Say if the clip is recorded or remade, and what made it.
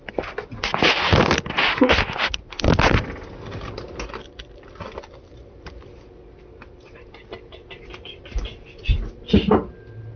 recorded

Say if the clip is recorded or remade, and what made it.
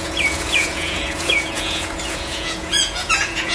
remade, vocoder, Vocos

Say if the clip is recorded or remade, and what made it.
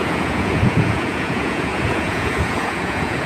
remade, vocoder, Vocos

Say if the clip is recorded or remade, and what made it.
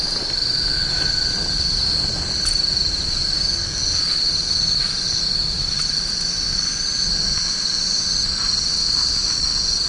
recorded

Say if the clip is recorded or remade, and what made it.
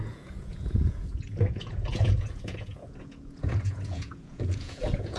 remade, vocoder, Vocos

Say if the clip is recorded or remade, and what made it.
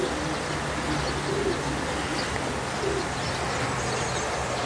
recorded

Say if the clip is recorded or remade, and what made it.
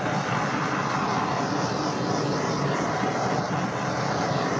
recorded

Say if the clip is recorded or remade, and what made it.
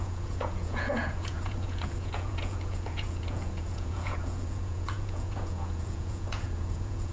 remade, vocoder, Vocos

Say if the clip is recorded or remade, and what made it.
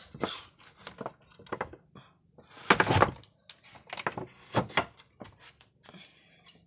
recorded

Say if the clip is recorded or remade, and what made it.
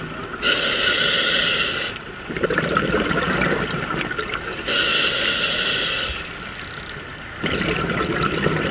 recorded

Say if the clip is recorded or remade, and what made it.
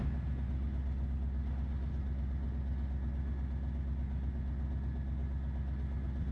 recorded